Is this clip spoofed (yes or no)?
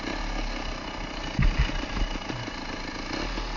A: no